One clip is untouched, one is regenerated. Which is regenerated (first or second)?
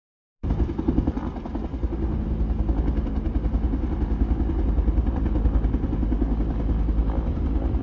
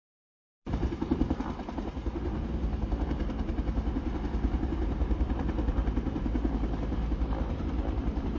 second